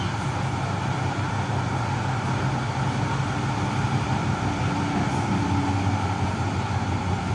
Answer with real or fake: real